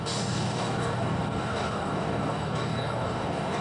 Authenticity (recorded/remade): remade